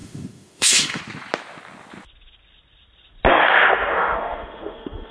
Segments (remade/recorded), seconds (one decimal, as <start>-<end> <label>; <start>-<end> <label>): 0.0-1.0 remade; 1.0-3.3 recorded; 3.3-5.1 remade